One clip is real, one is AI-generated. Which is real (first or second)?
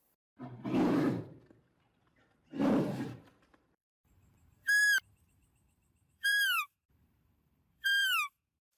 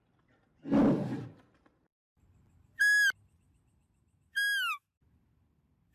second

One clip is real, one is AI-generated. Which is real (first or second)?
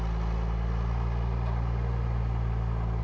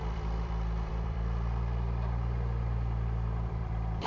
first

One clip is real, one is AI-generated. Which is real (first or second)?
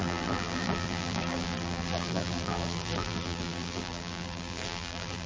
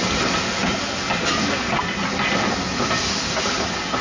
second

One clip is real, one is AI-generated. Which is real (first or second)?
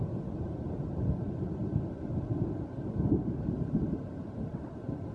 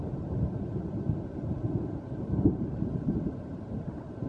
first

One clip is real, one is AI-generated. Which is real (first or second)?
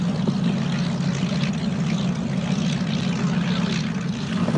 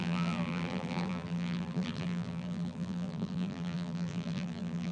first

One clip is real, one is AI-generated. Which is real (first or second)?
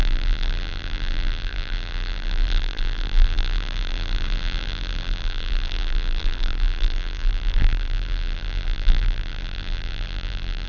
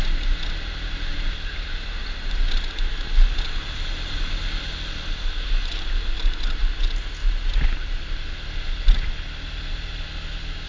second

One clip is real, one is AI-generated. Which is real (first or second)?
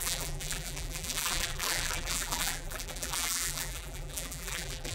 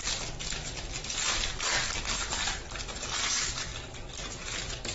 second